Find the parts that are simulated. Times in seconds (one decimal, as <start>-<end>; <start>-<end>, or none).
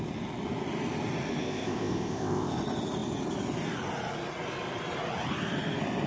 1.4-2.5